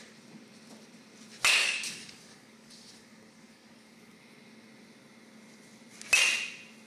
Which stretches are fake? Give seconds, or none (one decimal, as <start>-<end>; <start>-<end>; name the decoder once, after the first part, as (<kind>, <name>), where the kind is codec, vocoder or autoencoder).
1.6-4.2 (codec, DAC)